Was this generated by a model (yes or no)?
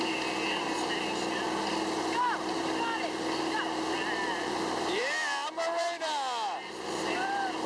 yes